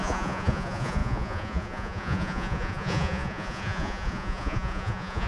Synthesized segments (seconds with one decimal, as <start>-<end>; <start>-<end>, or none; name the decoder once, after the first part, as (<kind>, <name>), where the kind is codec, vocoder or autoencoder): 0.0-5.3 (vocoder, Vocos)